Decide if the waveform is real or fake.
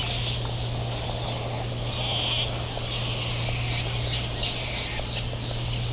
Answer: real